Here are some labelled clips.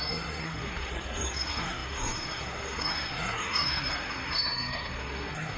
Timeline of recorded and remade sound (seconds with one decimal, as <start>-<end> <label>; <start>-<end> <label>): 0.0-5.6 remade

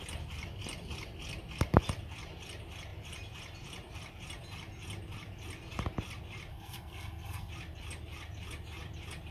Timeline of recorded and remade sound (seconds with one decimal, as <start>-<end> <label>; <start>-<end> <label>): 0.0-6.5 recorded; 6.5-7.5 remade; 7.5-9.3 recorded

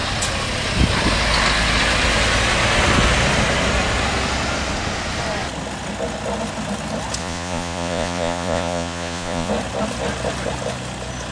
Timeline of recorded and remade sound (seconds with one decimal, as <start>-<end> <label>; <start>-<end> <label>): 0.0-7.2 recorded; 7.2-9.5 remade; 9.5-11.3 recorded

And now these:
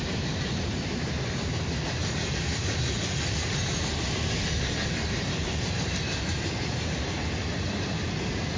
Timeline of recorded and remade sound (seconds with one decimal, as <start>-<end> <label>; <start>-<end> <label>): 0.0-1.5 remade; 1.5-2.4 recorded; 2.4-8.6 remade

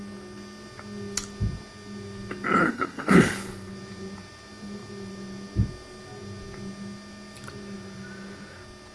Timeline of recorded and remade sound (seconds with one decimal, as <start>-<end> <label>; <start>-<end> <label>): 0.0-2.6 recorded; 2.6-3.2 remade; 3.2-8.9 recorded

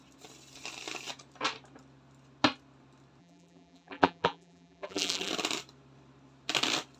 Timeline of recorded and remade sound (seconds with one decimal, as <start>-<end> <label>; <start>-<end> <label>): 0.0-3.2 recorded; 3.2-5.3 remade; 5.3-7.0 recorded

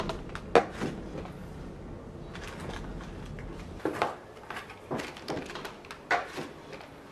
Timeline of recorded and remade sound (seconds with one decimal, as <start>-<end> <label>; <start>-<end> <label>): 0.0-7.1 recorded

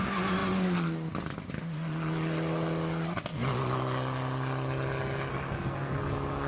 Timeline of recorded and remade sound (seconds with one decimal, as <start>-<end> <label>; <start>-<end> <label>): 0.0-5.3 recorded; 5.3-6.0 remade; 6.0-6.5 recorded